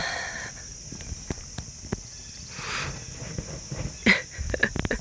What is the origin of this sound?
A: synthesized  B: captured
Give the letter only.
B